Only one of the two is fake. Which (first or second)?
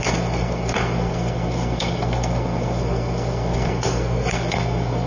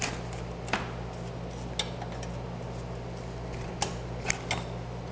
first